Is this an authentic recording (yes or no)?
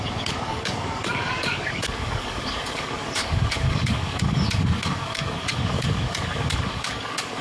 no